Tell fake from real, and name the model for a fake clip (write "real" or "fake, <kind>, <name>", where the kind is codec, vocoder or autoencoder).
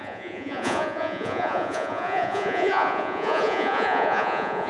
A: fake, vocoder, Vocos